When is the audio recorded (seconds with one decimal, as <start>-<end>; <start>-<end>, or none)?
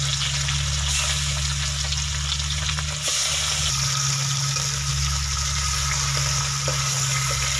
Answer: 0.0-7.6